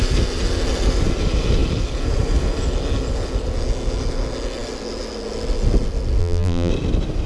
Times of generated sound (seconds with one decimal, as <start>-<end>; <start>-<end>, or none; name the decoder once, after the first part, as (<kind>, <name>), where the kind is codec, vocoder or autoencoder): 6.2-6.7 (vocoder, BigVGAN v2)